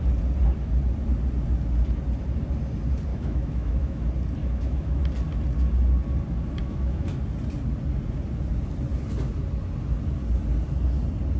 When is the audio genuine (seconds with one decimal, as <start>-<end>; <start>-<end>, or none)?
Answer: 0.0-3.1; 4.0-4.4; 5.0-6.6; 7.2-11.4